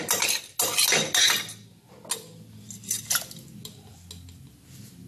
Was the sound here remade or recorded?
recorded